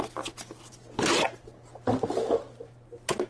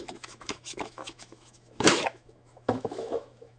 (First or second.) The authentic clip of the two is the first